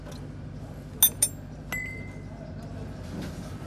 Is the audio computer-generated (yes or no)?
no